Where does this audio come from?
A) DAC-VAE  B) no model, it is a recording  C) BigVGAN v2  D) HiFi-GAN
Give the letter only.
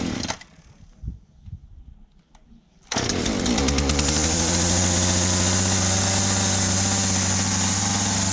B